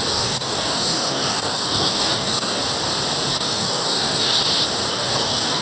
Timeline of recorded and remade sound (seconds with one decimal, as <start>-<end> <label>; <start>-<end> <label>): 0.0-2.6 remade; 2.6-3.3 recorded; 3.3-4.4 remade; 4.4-4.9 recorded; 4.9-5.6 remade